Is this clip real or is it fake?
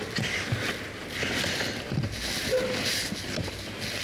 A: real